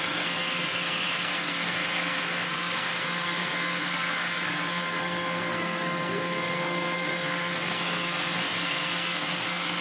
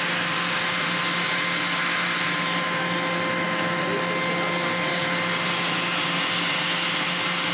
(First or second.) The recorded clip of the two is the second